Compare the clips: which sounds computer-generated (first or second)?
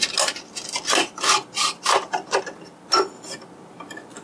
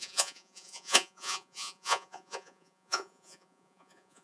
second